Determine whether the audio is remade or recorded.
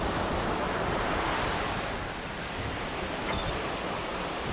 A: recorded